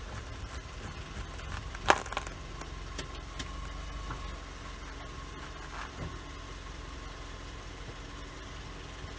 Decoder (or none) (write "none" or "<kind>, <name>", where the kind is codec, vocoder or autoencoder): none